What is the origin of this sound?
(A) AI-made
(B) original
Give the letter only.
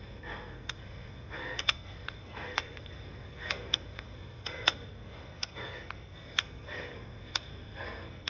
A